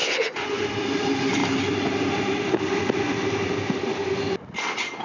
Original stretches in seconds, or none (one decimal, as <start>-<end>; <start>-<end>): 0.6-5.0